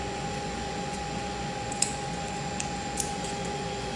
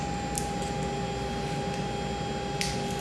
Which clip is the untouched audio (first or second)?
second